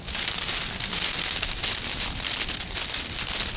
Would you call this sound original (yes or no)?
yes